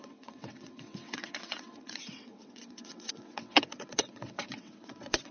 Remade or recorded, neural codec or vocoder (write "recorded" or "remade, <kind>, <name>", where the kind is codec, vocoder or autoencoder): remade, vocoder, WaveNeXt